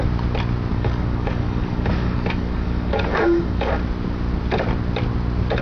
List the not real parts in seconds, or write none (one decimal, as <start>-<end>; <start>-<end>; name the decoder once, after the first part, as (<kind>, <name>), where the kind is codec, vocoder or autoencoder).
0.7-3.7 (codec, DAC)